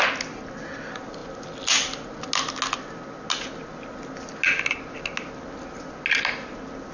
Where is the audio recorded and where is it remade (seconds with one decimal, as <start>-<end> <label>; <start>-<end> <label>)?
0.0-6.9 recorded